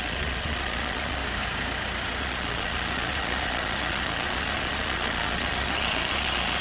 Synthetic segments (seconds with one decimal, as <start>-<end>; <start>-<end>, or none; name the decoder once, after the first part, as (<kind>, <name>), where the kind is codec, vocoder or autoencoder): 0.0-1.2 (vocoder, Vocos); 2.2-6.6